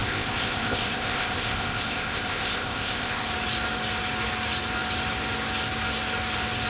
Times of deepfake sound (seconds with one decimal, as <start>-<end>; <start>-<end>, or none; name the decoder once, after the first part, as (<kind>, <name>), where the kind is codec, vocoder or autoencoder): 0.0-3.3 (codec, ZipCodec)

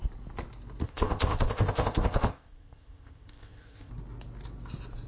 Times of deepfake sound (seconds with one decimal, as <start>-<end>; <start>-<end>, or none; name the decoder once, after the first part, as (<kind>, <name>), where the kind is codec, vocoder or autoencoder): 0.8-3.9 (codec, ZipCodec)

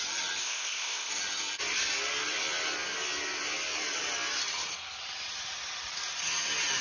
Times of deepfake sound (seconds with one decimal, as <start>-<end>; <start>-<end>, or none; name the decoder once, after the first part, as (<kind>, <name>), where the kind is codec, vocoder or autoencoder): 0.4-1.1 (codec, ZipCodec)

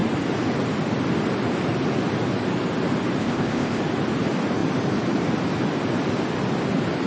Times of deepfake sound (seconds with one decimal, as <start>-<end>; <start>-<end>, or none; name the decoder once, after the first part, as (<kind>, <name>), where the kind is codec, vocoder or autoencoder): 3.2-3.8 (codec, ZipCodec)